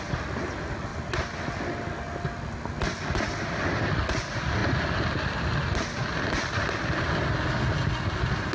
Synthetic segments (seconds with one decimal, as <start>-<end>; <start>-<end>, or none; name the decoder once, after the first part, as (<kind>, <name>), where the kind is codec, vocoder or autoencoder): none